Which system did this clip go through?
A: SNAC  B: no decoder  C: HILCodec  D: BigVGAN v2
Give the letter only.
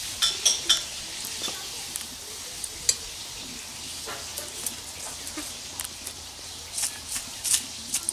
B